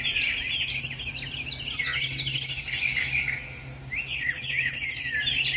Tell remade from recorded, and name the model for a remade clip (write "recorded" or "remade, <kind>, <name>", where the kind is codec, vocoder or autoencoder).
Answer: recorded